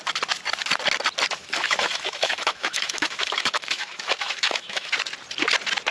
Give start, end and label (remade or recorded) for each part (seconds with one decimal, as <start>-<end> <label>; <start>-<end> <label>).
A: 0.0-1.4 recorded; 1.4-4.9 remade; 4.9-5.9 recorded